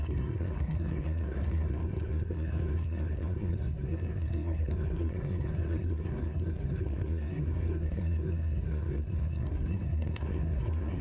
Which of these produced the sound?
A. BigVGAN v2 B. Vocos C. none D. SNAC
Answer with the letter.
D